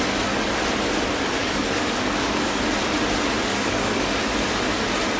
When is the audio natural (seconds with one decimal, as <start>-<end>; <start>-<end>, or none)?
0.0-1.4; 2.6-3.5; 4.2-5.2